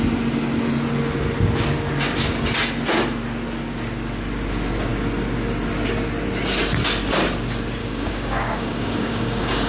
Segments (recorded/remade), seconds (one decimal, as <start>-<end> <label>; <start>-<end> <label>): 0.0-7.8 recorded; 7.8-9.7 remade